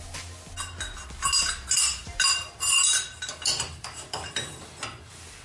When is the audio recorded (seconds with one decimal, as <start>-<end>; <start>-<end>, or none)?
0.0-5.4